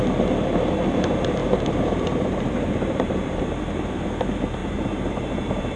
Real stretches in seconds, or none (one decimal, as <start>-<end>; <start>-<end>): 0.0-1.4; 3.4-4.6

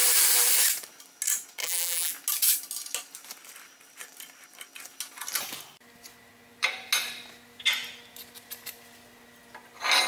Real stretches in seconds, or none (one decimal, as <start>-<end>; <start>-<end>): 0.0-1.6; 2.1-10.1

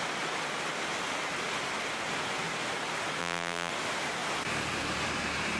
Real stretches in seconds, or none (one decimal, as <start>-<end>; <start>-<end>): 0.0-3.2; 3.7-5.6

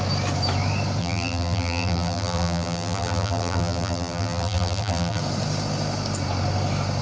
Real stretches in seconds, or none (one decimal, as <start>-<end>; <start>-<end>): 0.0-1.0; 5.2-7.0

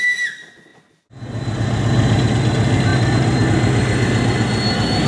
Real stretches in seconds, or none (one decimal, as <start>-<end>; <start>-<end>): 0.0-5.1